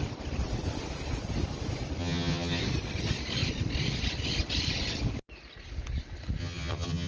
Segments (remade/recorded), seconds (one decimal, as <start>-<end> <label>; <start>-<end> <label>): 0.0-2.0 recorded; 2.0-2.6 remade; 2.6-6.4 recorded; 6.4-7.1 remade